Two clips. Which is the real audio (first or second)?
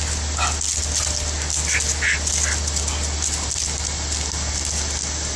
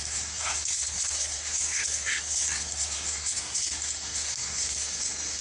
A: first